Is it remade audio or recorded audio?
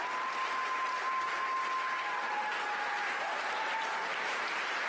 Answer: recorded